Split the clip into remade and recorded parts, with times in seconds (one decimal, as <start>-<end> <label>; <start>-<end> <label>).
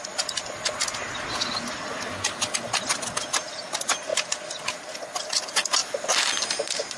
0.0-7.0 recorded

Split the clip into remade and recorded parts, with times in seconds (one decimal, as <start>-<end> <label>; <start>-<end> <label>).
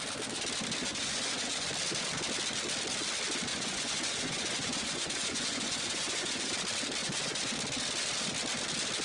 0.0-0.8 recorded; 0.8-1.7 remade; 1.7-3.5 recorded; 3.5-6.5 remade; 6.5-7.0 recorded; 7.0-7.5 remade; 7.5-9.0 recorded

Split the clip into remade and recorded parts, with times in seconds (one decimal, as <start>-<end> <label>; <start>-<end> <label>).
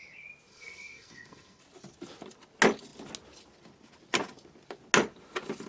0.0-0.5 recorded; 0.5-1.6 remade; 1.6-5.7 recorded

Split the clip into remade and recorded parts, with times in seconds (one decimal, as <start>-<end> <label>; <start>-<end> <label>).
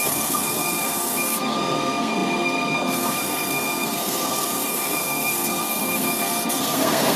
0.0-7.2 remade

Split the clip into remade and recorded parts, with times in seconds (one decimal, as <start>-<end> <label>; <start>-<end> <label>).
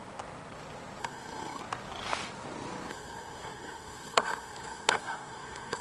0.0-1.0 recorded; 1.0-1.6 remade; 1.6-2.9 recorded; 2.9-5.8 remade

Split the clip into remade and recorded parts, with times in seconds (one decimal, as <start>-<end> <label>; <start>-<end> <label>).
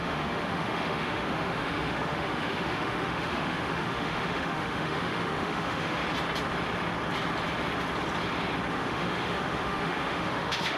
0.0-6.0 remade; 6.0-8.7 recorded; 8.7-10.8 remade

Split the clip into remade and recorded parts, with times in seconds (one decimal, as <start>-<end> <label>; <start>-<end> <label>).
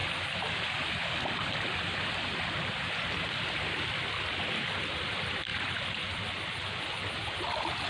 0.0-7.9 recorded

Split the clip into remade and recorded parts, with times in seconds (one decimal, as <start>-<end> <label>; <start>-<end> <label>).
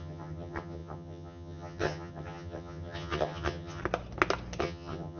0.0-3.8 remade; 3.8-4.6 recorded; 4.6-5.2 remade